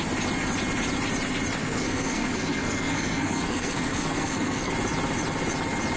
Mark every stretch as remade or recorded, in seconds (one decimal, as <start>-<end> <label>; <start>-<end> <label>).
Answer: 0.0-1.6 recorded; 1.6-4.7 remade; 4.7-6.0 recorded